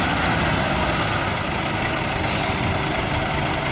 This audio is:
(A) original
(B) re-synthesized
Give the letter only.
A